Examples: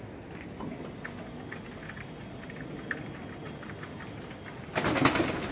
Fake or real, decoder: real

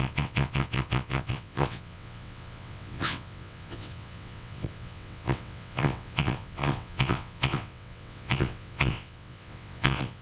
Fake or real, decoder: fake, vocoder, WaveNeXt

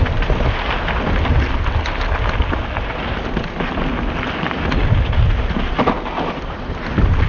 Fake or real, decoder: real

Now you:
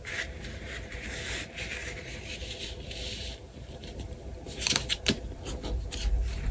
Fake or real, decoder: fake, vocoder, BigVGAN v2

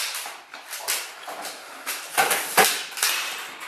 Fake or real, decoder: fake, vocoder, BigVGAN v2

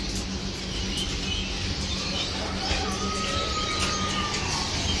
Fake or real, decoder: real